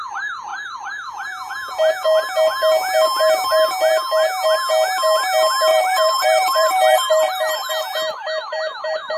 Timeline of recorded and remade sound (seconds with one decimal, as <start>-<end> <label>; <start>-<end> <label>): 0.0-5.7 recorded; 5.7-7.7 remade; 7.7-9.2 recorded